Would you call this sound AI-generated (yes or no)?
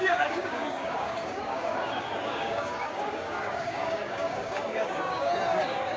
yes